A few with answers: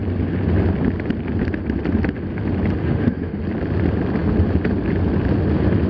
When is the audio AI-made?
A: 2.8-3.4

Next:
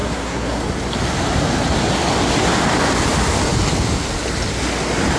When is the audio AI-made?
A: 0.0-0.6

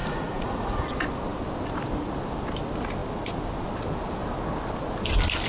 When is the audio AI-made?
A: 0.0-0.9

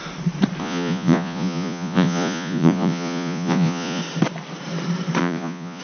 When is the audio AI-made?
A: 0.6-4.0; 5.2-5.8

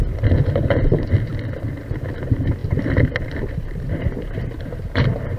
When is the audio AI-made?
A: 0.0-1.3; 2.2-5.4

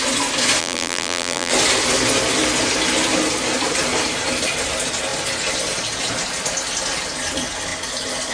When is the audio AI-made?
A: 0.6-1.5

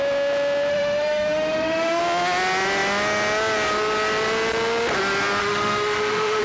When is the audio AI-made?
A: 0.7-2.0; 5.4-6.4